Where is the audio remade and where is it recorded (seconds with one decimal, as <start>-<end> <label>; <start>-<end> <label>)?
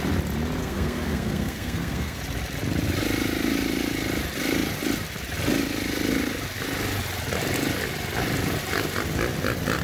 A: 0.0-0.6 recorded; 0.6-2.2 remade; 2.2-9.8 recorded